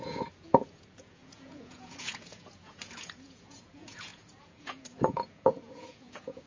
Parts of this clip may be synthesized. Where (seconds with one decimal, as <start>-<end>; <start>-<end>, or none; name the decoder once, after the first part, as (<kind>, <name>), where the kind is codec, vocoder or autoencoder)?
0.0-6.5 (vocoder, Vocos)